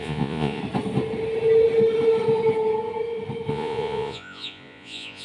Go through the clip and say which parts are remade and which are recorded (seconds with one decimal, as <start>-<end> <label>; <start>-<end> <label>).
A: 0.0-0.6 remade; 0.6-3.5 recorded; 3.5-5.2 remade